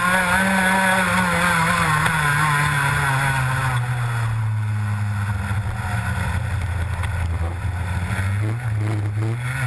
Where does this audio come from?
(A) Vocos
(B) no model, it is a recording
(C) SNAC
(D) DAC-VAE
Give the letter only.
B